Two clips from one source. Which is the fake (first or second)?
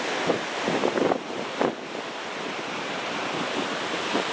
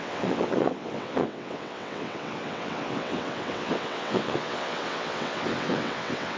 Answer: second